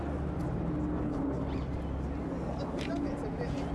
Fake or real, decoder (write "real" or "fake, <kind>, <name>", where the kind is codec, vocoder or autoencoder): real